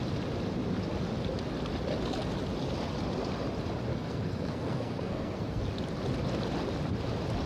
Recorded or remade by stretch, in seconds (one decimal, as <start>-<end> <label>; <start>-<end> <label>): 0.0-3.9 recorded; 3.9-5.6 remade; 5.6-7.5 recorded